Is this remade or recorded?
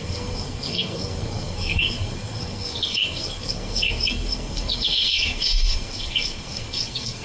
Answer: remade